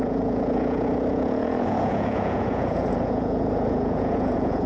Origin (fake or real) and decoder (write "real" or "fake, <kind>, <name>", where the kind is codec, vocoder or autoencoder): fake, vocoder, Vocos